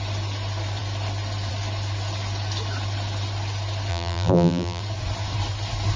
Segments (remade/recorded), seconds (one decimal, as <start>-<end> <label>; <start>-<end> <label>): 0.0-3.9 recorded; 3.9-4.8 remade; 4.8-6.0 recorded